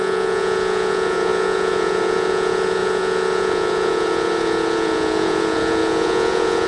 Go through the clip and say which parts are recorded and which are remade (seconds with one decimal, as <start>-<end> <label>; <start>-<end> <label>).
0.0-6.7 remade